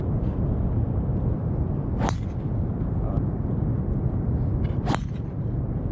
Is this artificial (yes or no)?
no